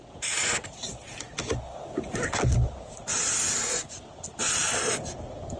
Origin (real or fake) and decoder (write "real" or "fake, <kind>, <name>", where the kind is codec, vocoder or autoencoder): real